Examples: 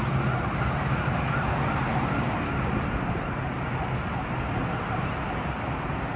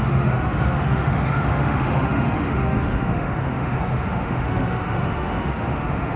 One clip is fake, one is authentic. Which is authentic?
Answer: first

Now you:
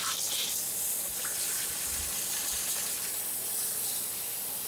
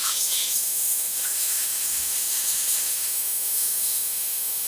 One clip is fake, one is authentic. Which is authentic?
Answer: first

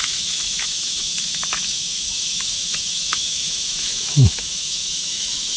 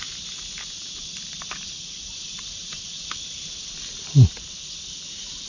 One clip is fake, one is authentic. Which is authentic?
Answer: second